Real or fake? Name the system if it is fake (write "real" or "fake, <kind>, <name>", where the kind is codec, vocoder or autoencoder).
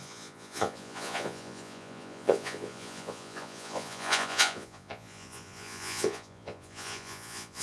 fake, vocoder, Vocos